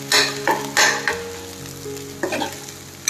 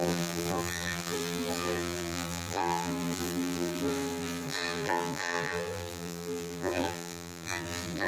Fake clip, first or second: second